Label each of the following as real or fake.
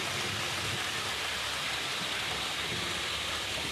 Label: real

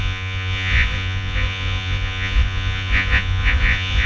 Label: fake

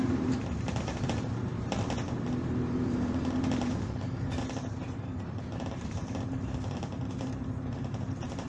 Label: fake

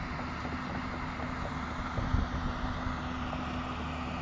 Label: real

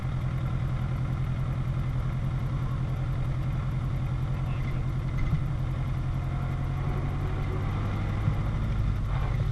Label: real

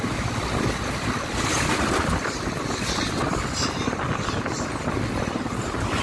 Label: real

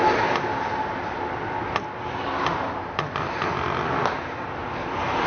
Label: real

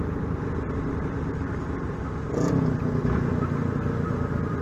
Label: real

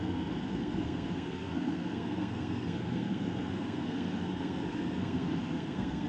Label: fake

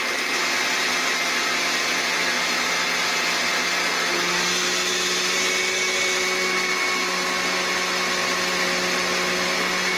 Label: real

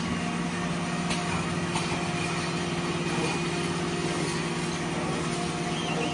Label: real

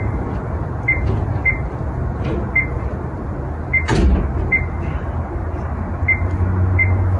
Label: real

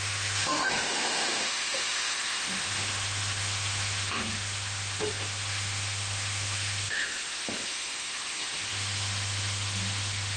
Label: fake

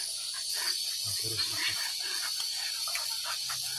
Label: real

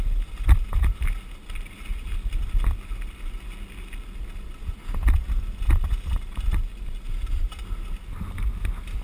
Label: real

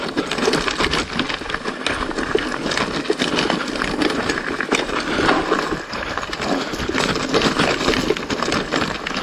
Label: real